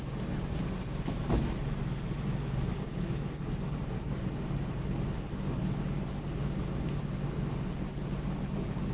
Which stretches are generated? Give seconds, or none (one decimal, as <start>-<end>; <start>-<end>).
none